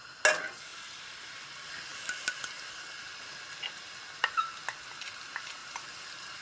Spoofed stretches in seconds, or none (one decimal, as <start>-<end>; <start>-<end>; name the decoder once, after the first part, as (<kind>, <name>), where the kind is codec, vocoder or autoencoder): 5.6-6.4 (vocoder, BigVGAN v2)